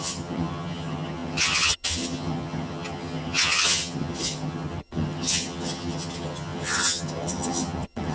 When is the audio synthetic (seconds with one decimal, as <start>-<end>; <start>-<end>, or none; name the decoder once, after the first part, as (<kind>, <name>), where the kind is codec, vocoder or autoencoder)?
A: 0.0-8.1 (vocoder, HiFi-GAN)